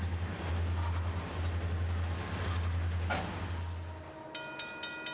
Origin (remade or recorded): recorded